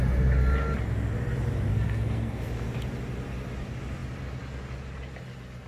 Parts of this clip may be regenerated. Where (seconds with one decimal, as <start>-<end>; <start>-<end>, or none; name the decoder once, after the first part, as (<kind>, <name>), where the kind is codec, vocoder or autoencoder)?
1.7-2.5 (codec, SNAC)